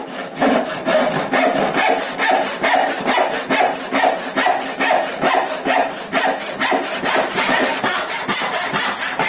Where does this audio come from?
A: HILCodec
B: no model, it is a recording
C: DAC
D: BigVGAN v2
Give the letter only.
B